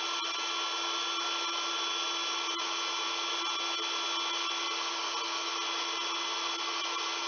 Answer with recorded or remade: recorded